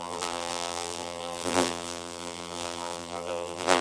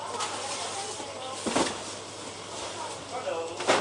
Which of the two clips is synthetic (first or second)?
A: first